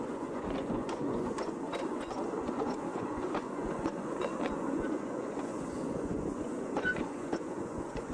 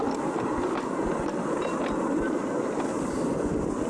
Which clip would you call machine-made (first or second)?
first